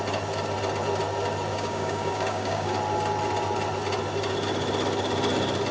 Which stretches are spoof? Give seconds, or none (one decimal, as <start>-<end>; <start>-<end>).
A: 1.5-2.7